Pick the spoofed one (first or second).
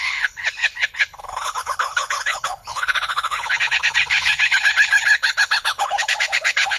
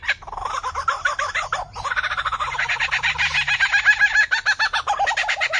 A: first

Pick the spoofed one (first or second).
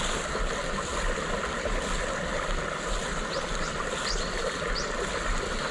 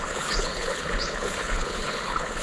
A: second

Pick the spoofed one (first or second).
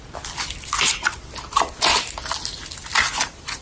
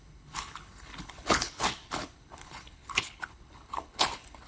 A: second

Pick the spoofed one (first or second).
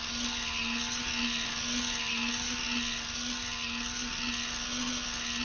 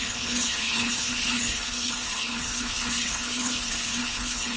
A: second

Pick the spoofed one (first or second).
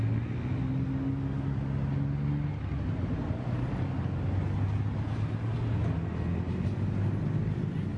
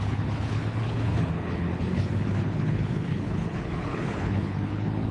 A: second